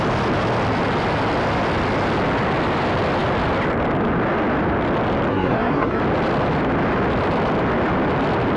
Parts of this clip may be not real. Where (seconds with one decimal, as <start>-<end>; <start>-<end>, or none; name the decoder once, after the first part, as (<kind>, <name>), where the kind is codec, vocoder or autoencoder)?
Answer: 5.3-6.0 (codec, SNAC)